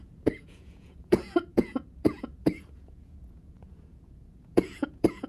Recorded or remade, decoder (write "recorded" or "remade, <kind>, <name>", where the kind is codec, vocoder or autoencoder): remade, vocoder, Vocos